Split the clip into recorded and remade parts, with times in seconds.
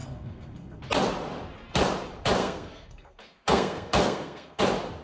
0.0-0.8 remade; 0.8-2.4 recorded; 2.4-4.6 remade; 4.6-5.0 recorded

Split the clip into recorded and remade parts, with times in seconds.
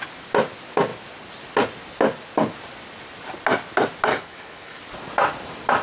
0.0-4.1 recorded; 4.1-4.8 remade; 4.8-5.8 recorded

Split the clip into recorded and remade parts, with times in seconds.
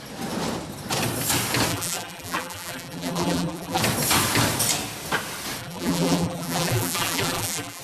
0.0-1.7 recorded; 1.7-3.8 remade; 3.8-5.6 recorded; 5.6-7.8 remade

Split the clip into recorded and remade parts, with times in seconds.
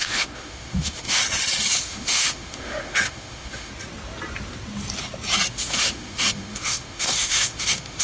0.0-1.2 remade; 1.2-1.8 recorded; 1.8-3.7 remade; 3.7-5.5 recorded; 5.5-8.0 remade